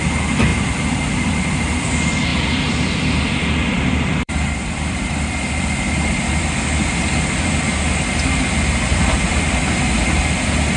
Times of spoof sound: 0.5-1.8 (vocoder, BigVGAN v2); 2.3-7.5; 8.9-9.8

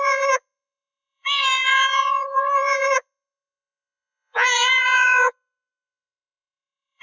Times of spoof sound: 0.0-7.0 (vocoder, Vocos)

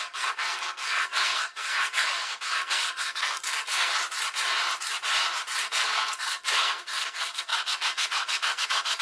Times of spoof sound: 0.0-4.0 (codec, SNAC); 5.6-9.0